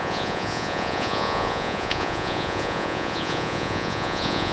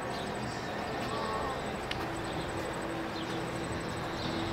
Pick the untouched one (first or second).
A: second